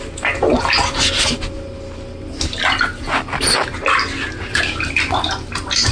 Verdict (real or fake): real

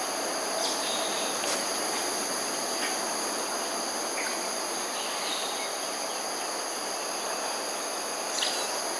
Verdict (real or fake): real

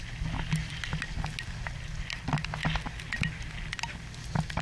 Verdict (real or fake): real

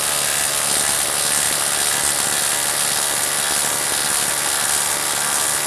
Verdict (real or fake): real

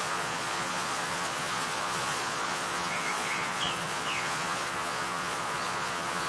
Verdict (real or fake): fake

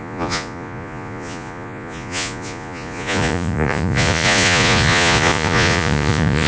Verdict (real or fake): fake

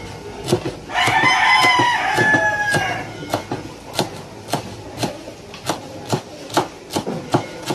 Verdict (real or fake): real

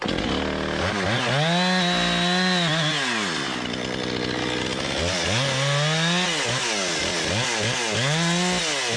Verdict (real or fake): real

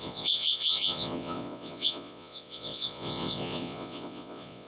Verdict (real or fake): fake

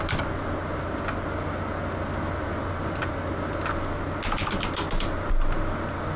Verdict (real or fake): real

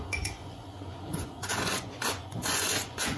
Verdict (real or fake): fake